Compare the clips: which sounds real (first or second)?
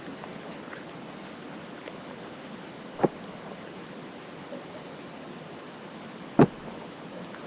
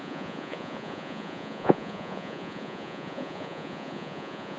first